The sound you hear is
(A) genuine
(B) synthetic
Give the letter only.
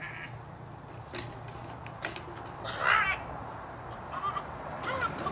A